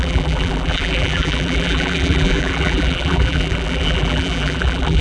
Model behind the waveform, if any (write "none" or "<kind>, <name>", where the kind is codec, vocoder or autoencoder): vocoder, BigVGAN v2